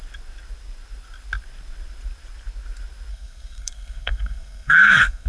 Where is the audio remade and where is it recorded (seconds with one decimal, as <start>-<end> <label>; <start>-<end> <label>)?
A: 0.0-3.1 recorded; 3.1-5.3 remade